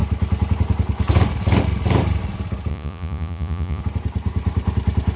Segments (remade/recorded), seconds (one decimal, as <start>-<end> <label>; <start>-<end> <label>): 0.0-2.7 recorded; 2.7-3.8 remade; 3.8-5.2 recorded